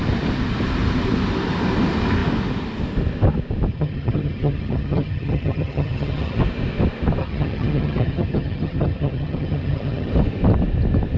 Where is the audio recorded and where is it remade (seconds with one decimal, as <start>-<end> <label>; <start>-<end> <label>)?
0.0-3.7 recorded; 3.7-6.4 remade; 6.4-7.2 recorded; 7.2-10.1 remade; 10.1-11.2 recorded